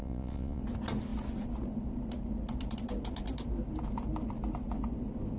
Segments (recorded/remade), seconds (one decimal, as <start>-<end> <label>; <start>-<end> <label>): 0.0-0.6 remade; 0.6-5.4 recorded